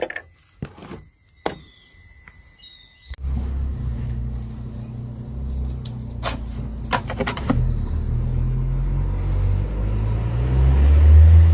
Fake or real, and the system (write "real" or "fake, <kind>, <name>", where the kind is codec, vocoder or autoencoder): real